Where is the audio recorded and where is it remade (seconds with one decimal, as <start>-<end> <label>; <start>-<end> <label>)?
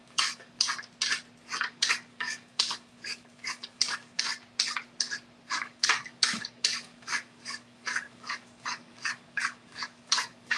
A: 0.0-0.7 remade; 0.7-1.7 recorded; 1.7-4.3 remade; 4.3-5.5 recorded; 5.5-10.6 remade